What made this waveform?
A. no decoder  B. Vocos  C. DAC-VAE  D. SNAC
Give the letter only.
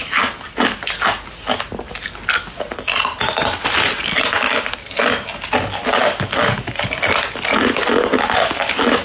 A